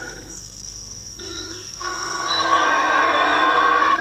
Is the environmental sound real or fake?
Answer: fake